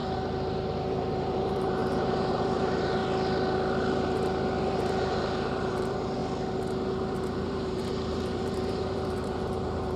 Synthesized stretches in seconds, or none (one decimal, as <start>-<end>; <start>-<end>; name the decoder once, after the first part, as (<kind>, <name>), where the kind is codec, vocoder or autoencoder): 1.1-3.0 (vocoder, BigVGAN v2); 4.6-6.2; 6.9-10.0